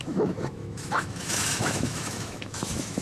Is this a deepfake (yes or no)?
yes